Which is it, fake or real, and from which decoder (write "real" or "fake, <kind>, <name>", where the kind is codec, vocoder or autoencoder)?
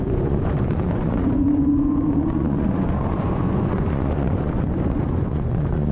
fake, vocoder, Vocos